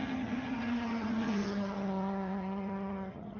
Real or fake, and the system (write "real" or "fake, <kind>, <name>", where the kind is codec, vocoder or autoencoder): fake, vocoder, HiFi-GAN